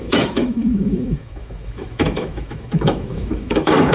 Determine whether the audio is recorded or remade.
remade